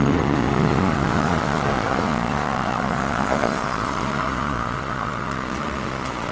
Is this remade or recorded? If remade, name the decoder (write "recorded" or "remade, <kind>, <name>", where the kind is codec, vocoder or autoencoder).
remade, vocoder, Vocos